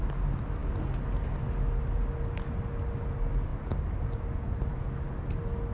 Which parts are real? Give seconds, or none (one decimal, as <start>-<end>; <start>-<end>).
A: 0.0-5.7